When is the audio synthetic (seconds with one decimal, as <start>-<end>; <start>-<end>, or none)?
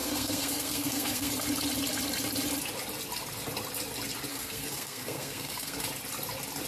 0.0-1.3; 4.3-5.8